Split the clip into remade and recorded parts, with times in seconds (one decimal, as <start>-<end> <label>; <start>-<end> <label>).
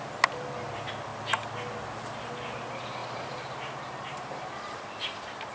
0.0-3.0 recorded; 3.0-4.8 remade; 4.8-5.5 recorded